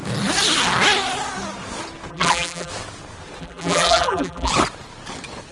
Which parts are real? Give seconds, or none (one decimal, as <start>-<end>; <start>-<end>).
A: 0.0-2.1; 2.7-3.4; 4.5-5.5